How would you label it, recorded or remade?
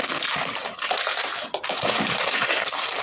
recorded